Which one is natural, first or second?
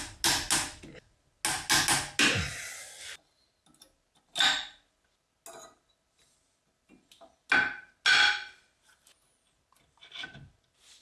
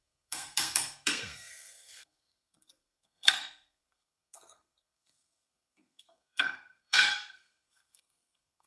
first